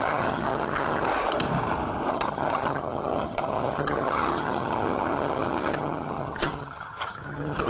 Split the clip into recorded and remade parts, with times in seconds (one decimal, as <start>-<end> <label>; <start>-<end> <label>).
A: 0.0-1.1 remade; 1.1-2.1 recorded; 2.1-7.7 remade